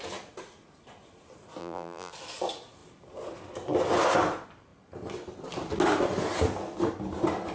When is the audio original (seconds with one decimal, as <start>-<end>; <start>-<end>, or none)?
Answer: 0.0-1.6; 2.1-7.5